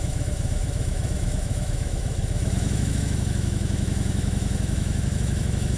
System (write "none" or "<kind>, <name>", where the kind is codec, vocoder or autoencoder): autoencoder, DAC-VAE